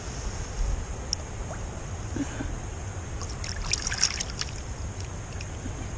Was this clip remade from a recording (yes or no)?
no